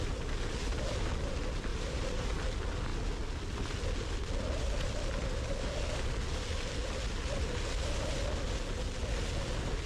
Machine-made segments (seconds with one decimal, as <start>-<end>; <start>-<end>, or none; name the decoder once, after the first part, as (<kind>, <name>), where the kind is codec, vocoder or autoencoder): 1.7-2.3 (vocoder, BigVGAN v2)